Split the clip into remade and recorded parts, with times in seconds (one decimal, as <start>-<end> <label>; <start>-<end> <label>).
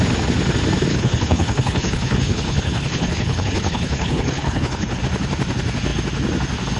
0.0-0.9 recorded; 0.9-5.0 remade; 5.0-6.8 recorded